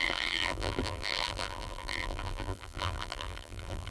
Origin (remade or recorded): remade